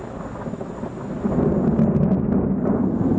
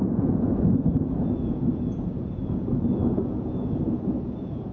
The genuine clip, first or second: first